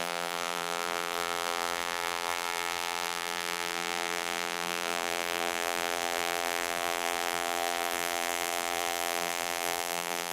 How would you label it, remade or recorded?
remade